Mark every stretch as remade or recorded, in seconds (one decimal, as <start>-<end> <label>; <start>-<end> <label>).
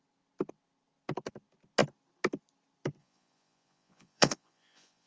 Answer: 0.0-3.0 recorded; 3.0-5.1 remade